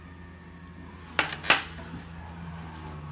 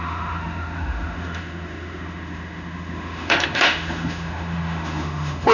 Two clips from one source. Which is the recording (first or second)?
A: first